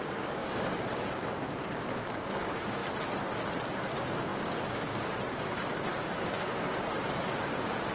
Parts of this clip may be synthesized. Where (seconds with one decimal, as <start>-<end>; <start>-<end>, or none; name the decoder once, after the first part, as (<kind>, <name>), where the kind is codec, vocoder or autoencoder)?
0.0-2.8 (codec, DAC); 3.7-7.9